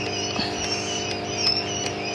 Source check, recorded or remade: recorded